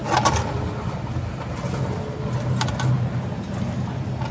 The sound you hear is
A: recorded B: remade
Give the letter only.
A